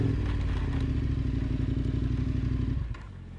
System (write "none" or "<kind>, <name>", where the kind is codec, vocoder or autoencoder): none